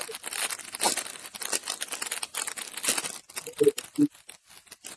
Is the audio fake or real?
real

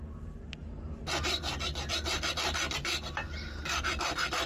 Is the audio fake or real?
real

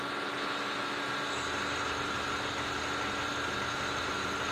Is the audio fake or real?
real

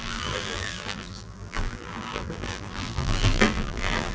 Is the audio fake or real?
fake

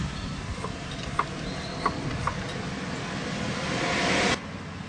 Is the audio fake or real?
real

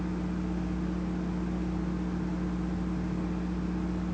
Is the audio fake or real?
real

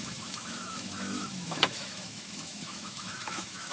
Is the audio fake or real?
fake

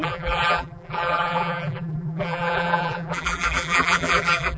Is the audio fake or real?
fake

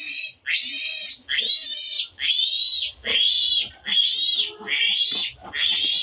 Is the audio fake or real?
real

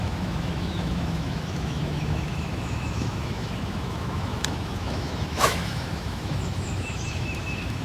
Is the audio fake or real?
fake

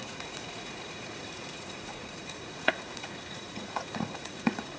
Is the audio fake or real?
fake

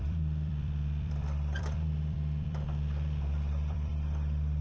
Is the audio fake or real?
fake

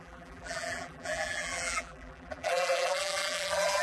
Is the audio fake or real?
fake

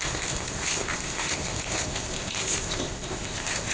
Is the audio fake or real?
fake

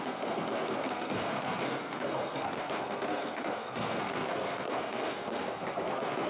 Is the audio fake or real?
fake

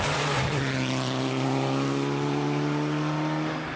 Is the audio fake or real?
real